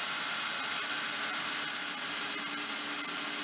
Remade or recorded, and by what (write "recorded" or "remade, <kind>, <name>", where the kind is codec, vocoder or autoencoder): recorded